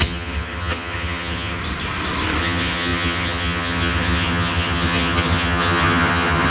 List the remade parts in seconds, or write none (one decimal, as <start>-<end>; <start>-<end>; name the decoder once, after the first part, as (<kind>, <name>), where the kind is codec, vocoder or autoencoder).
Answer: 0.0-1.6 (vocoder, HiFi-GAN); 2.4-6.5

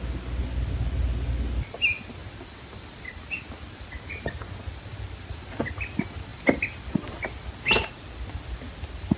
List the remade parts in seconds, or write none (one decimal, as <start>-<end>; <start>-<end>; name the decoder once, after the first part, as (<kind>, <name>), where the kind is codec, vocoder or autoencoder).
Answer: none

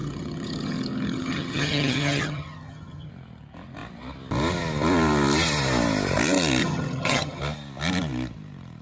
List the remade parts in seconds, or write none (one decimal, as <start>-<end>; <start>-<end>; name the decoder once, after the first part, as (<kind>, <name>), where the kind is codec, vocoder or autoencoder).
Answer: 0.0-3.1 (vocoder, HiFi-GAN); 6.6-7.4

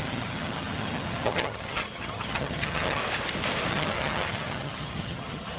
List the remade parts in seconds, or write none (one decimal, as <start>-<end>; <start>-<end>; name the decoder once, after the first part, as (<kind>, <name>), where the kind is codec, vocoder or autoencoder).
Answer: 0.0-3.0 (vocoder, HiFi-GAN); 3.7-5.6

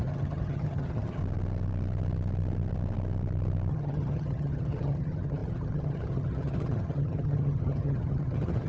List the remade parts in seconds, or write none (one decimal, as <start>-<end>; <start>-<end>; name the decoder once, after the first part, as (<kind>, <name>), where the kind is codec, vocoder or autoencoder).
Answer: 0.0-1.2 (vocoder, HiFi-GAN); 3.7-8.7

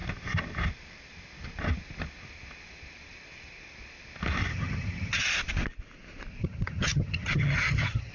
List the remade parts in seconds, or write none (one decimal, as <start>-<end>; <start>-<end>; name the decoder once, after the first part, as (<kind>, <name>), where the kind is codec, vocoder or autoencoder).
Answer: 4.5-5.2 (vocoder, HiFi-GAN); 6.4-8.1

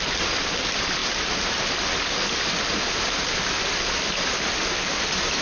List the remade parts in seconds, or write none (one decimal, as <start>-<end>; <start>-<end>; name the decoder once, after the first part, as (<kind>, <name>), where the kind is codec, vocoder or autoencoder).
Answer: none